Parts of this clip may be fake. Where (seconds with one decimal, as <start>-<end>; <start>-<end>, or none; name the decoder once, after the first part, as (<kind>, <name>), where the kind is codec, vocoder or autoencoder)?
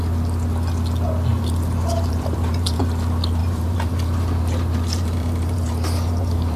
1.3-2.8 (vocoder, BigVGAN v2); 3.4-6.6